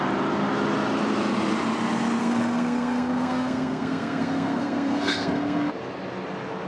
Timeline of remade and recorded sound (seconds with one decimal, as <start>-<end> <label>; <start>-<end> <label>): 0.0-2.2 recorded; 2.2-5.7 remade; 5.7-6.7 recorded